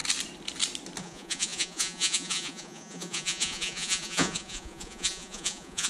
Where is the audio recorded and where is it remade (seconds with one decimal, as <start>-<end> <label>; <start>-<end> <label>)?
0.0-1.0 recorded; 1.0-5.9 remade